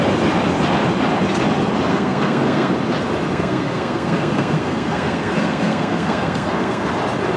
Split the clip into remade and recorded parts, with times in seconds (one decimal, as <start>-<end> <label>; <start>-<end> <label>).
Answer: 0.0-1.9 recorded; 1.9-2.7 remade; 2.7-3.3 recorded; 3.3-6.9 remade; 6.9-7.4 recorded